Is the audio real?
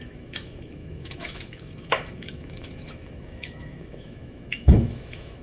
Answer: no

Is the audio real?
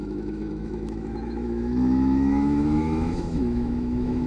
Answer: no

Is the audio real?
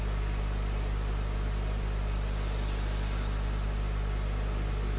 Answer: yes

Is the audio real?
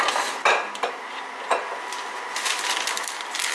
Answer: yes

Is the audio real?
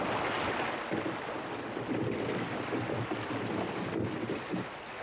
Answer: yes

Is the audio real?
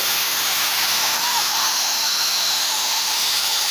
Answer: no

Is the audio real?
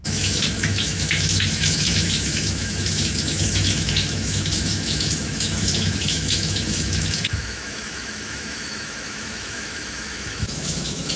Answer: no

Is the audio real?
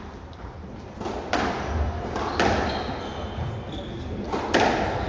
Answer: yes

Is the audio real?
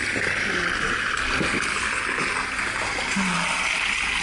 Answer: yes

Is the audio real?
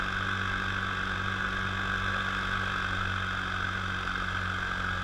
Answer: yes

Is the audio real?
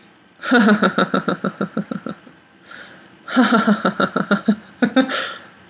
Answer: yes